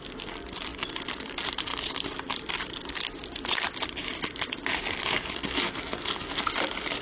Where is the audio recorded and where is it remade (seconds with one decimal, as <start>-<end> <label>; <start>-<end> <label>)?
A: 0.0-7.0 recorded